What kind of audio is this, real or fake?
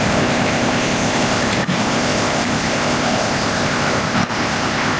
fake